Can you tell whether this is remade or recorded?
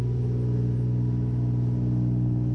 recorded